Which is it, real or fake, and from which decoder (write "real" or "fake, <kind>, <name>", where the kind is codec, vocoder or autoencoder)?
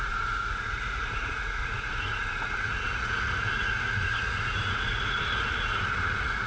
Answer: fake, vocoder, Vocos